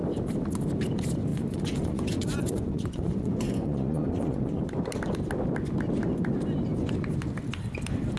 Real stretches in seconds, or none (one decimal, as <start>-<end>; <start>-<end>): 0.0-1.3; 4.6-8.2